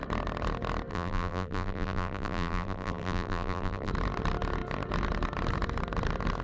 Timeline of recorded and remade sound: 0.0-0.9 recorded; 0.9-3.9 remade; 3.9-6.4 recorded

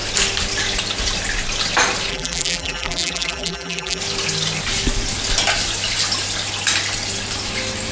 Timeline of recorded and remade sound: 0.0-2.1 recorded; 2.1-4.0 remade; 4.0-7.9 recorded

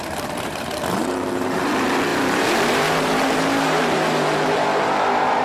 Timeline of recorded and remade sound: 0.0-1.6 remade; 1.6-2.1 recorded; 2.1-5.4 remade

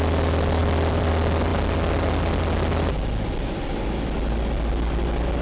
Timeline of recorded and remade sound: 0.0-0.6 recorded; 0.6-1.1 remade; 1.1-5.4 recorded

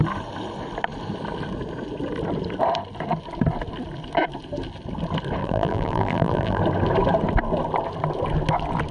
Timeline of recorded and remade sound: 0.0-5.4 recorded; 5.4-6.6 remade; 6.6-8.9 recorded